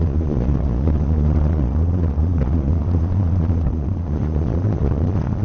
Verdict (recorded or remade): remade